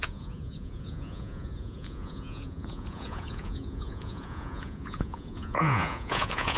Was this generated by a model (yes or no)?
yes